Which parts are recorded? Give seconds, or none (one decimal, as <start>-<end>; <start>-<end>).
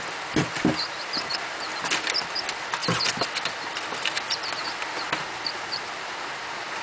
0.0-6.8